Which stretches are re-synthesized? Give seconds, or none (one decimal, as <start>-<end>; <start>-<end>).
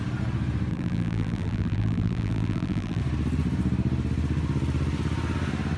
0.7-3.0